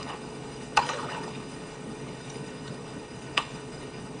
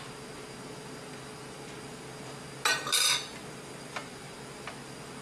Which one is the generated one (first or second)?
first